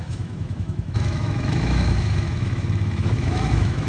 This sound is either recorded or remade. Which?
remade